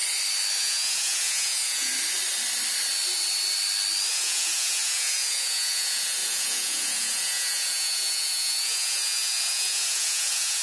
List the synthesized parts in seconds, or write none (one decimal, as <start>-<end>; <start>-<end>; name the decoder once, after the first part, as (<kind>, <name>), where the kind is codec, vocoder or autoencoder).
0.6-1.9 (vocoder, Vocos); 4.1-10.6